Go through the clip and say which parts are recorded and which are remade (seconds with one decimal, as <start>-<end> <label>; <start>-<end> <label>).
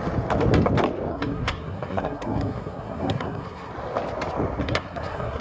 0.0-1.1 recorded; 1.1-3.7 remade; 3.7-4.6 recorded; 4.6-5.4 remade